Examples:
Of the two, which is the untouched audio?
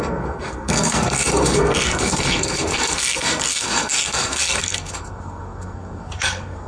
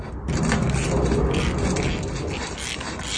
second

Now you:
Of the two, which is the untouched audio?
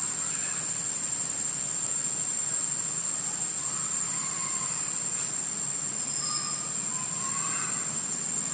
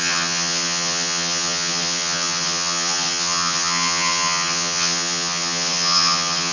first